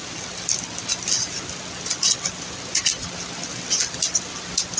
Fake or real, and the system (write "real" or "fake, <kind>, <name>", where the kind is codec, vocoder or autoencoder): real